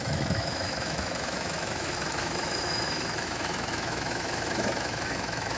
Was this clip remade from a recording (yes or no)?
yes